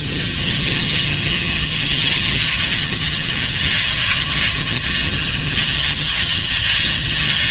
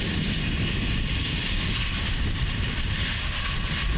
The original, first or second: second